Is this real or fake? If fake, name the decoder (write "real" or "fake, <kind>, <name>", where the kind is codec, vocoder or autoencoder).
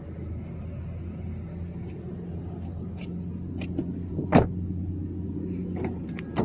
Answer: real